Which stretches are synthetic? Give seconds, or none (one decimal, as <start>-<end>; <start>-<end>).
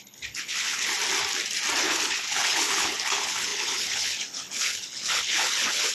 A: 0.0-0.9; 1.8-5.9